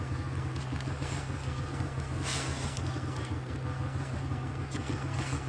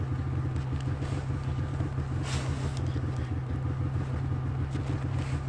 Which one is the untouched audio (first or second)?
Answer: second